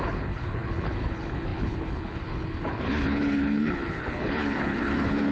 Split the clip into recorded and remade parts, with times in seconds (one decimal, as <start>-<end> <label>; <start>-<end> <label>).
0.0-5.3 remade